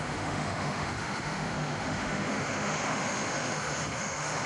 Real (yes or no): no